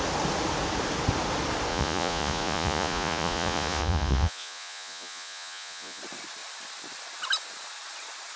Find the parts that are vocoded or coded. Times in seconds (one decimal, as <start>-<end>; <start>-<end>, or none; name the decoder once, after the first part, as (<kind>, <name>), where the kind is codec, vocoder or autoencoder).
1.7-6.0 (vocoder, Vocos)